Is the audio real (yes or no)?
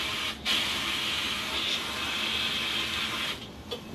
yes